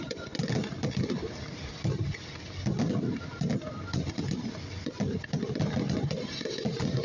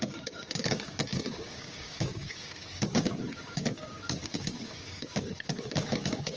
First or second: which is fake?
second